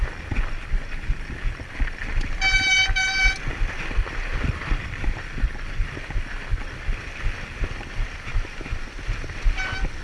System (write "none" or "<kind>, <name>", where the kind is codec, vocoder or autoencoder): none